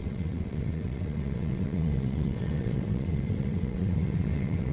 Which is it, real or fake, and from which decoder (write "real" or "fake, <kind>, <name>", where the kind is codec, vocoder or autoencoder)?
fake, vocoder, WaveNeXt